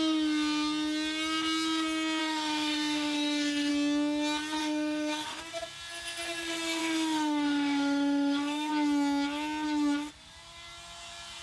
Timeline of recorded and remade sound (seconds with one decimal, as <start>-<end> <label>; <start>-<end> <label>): 0.0-2.2 recorded; 2.2-3.7 remade; 3.7-4.6 recorded; 4.6-5.4 remade; 5.4-6.8 recorded; 6.8-8.7 remade; 8.7-11.4 recorded